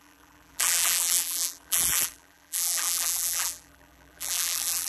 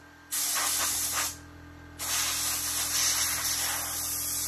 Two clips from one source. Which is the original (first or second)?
second